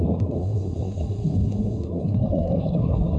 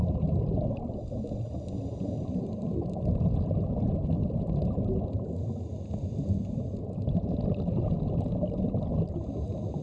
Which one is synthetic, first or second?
first